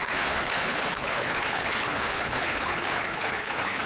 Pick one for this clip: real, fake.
fake